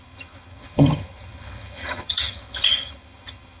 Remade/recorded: remade